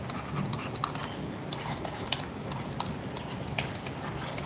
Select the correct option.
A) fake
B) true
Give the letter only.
B